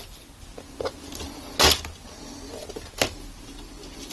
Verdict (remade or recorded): recorded